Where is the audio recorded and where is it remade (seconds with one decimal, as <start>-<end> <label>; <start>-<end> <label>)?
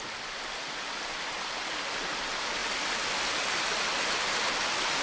0.0-5.0 recorded